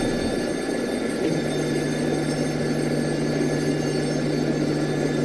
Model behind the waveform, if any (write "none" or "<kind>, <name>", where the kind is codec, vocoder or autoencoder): none